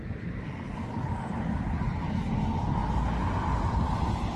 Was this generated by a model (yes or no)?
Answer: no